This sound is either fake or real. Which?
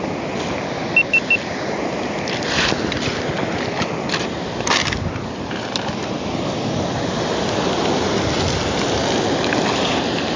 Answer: real